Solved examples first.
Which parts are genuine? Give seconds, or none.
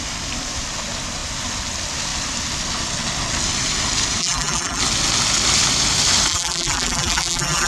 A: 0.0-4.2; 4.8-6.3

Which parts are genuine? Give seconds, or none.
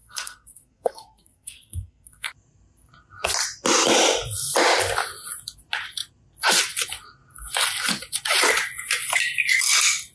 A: 2.3-10.1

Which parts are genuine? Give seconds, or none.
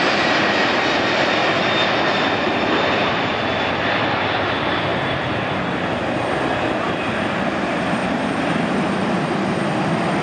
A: 0.0-4.9; 5.5-8.0; 9.6-10.2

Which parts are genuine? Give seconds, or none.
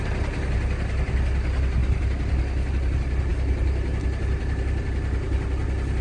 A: 0.0-6.0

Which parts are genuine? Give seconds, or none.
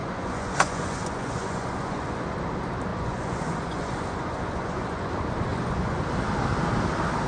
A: 2.2-2.9; 5.1-5.5; 6.0-7.3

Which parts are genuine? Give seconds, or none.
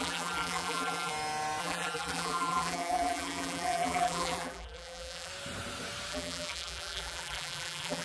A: 1.1-1.6; 5.3-6.1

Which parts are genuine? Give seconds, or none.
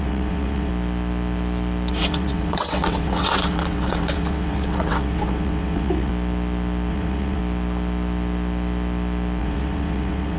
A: 0.7-1.9; 6.1-6.9; 7.4-9.4